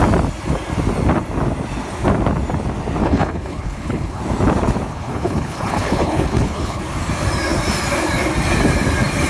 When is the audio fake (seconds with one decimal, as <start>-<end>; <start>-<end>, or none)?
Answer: 3.0-4.2; 4.9-6.8